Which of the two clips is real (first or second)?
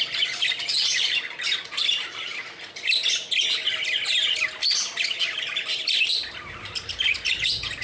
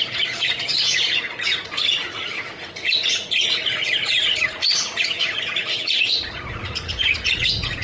first